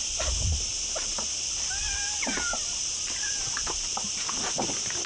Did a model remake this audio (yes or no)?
yes